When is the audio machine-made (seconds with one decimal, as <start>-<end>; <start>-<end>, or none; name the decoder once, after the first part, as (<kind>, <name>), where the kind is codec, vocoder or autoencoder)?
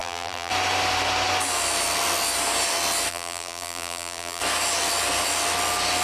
0.0-0.5 (vocoder, BigVGAN v2); 3.1-4.4